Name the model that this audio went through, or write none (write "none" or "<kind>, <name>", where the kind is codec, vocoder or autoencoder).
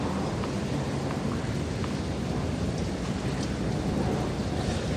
none